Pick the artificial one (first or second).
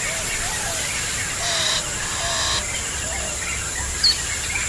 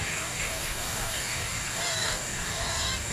second